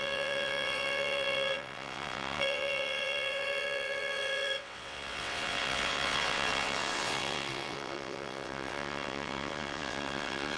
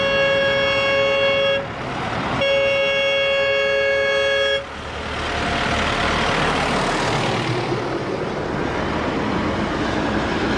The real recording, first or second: second